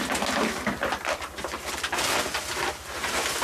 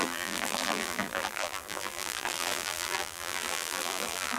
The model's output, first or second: second